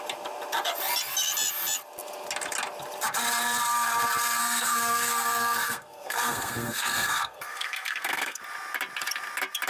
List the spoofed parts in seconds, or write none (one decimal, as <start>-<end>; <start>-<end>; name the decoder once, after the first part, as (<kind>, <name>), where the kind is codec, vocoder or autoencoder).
4.4-8.4 (codec, SNAC)